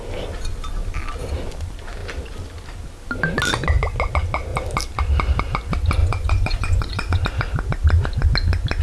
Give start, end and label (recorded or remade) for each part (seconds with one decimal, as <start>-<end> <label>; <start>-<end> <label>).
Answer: 0.0-6.0 recorded; 6.0-7.2 remade; 7.2-8.8 recorded

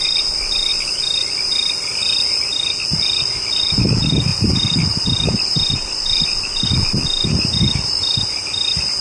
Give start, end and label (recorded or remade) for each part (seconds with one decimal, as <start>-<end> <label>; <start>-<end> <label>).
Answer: 0.0-9.0 recorded

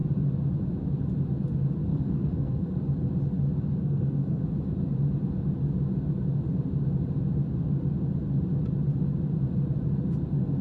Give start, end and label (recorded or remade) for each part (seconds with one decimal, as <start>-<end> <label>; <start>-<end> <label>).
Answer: 0.0-1.9 recorded; 1.9-2.7 remade; 2.7-3.8 recorded; 3.8-4.4 remade; 4.4-10.6 recorded